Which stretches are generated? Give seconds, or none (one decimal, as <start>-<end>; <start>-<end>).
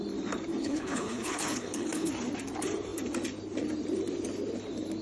0.6-2.1